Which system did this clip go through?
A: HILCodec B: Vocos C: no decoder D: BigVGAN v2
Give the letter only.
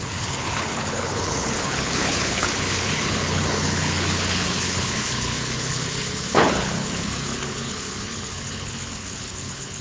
A